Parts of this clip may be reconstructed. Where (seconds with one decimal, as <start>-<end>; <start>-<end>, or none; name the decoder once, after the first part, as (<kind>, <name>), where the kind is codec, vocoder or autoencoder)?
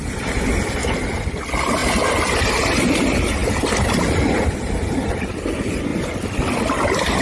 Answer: none